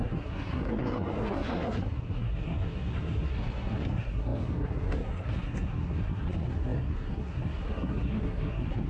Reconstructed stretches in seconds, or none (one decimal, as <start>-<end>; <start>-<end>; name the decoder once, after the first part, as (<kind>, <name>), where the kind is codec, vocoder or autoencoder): 0.0-8.9 (codec, SNAC)